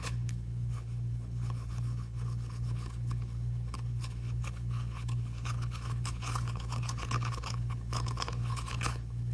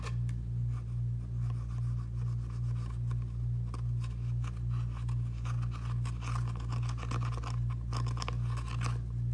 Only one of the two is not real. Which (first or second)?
first